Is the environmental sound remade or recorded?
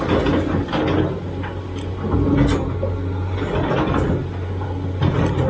recorded